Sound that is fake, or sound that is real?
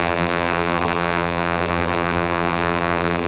fake